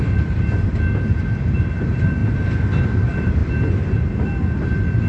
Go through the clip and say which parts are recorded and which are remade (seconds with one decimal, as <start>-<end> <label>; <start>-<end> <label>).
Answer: 0.0-0.7 remade; 0.7-1.4 recorded; 1.4-2.2 remade; 2.2-2.8 recorded; 2.8-3.4 remade; 3.4-5.1 recorded